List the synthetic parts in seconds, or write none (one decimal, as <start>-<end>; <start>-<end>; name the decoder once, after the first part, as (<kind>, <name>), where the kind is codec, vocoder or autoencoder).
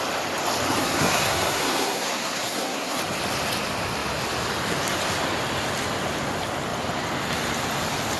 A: 0.8-3.0 (codec, SNAC)